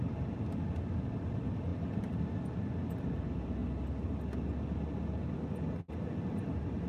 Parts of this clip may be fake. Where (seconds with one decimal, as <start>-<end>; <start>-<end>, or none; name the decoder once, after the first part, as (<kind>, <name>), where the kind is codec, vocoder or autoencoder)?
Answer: none